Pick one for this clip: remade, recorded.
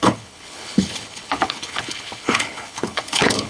remade